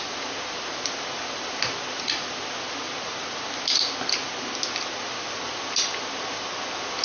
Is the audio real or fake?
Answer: real